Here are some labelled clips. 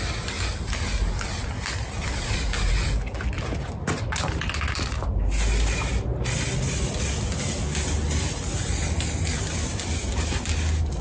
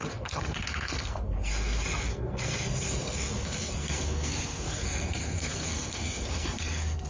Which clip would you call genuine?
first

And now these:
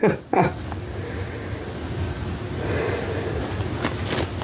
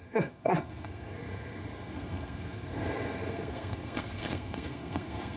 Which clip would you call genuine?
first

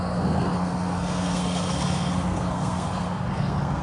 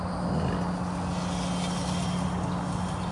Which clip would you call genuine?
second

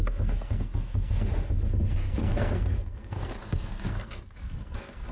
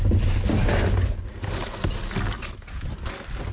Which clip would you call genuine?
second